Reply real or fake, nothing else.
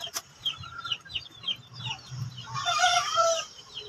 fake